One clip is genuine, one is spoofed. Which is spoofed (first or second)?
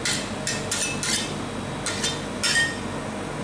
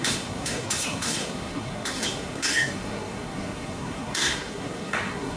second